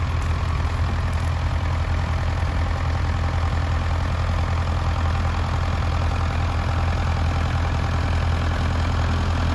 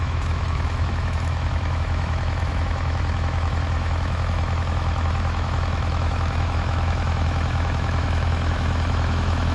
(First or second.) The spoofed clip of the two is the second